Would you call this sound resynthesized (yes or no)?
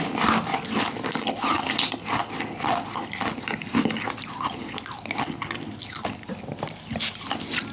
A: no